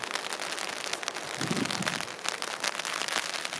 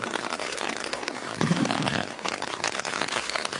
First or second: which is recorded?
first